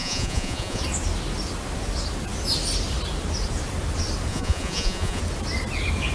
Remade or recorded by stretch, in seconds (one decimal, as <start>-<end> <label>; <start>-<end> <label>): 0.0-0.8 remade; 0.8-4.3 recorded; 4.3-5.2 remade; 5.2-6.1 recorded